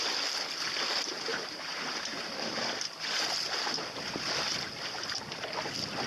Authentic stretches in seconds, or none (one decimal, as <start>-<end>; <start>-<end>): 0.0-1.3; 2.5-6.1